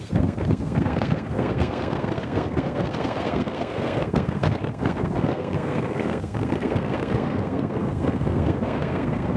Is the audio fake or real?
fake